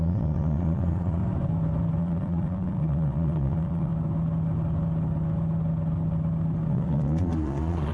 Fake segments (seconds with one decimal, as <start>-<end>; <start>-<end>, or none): 0.0-1.2; 2.0-3.9; 6.7-7.9